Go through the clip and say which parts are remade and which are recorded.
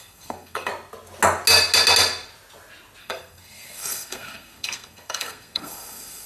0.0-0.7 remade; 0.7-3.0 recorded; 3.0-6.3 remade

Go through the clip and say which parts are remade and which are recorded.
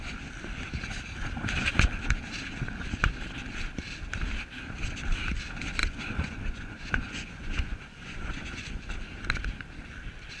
0.0-5.8 recorded; 5.8-8.9 remade; 8.9-10.4 recorded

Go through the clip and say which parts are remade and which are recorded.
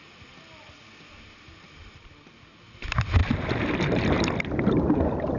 0.0-5.4 recorded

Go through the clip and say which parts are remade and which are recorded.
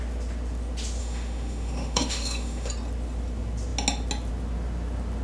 0.0-1.0 recorded; 1.0-2.7 remade; 2.7-5.2 recorded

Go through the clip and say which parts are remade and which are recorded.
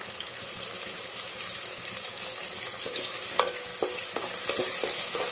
0.0-3.7 remade; 3.7-4.7 recorded; 4.7-5.3 remade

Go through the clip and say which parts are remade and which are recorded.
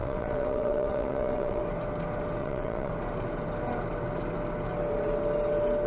0.0-1.6 remade; 1.6-2.4 recorded; 2.4-2.9 remade; 2.9-5.9 recorded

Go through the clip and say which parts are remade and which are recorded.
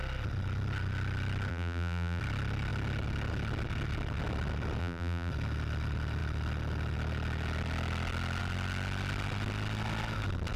0.0-1.5 recorded; 1.5-2.2 remade; 2.2-4.8 recorded; 4.8-5.3 remade; 5.3-10.6 recorded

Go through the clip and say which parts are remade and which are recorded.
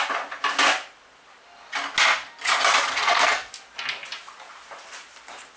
0.0-2.9 recorded; 2.9-3.5 remade; 3.5-5.6 recorded